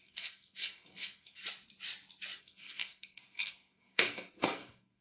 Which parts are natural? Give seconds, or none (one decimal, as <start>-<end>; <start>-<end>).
1.4-2.4